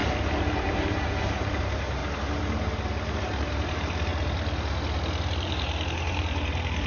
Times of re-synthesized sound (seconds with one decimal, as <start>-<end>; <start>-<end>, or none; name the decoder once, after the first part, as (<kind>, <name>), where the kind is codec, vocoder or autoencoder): 0.0-2.0 (vocoder, BigVGAN v2); 3.2-4.1; 5.2-6.9